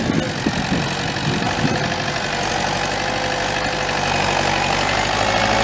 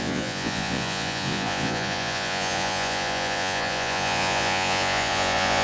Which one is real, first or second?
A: first